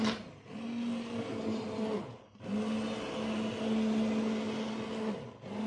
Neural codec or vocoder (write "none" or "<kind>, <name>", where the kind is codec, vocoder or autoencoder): none